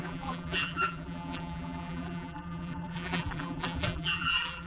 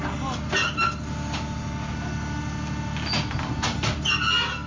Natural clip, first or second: second